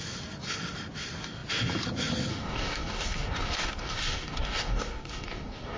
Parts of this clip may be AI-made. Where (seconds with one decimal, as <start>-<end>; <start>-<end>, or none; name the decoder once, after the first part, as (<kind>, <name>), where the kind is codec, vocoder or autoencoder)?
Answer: 2.3-5.8 (codec, DAC)